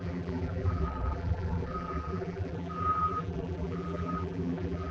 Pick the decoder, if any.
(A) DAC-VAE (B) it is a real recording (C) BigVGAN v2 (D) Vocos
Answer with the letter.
C